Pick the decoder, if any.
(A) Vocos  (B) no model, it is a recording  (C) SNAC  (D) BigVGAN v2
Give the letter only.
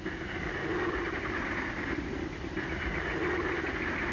B